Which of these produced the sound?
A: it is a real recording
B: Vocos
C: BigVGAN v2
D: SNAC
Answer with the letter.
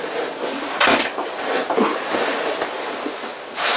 A